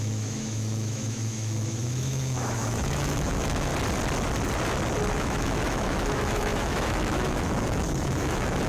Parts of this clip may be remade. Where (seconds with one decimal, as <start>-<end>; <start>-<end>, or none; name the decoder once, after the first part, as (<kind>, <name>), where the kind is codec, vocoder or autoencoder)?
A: 0.0-3.7 (autoencoder, DAC-VAE); 5.1-8.7